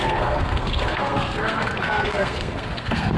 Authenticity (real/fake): fake